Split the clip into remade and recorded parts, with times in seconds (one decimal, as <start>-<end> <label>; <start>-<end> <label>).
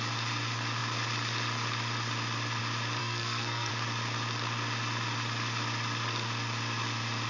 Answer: 0.0-3.0 recorded; 3.0-3.7 remade; 3.7-7.3 recorded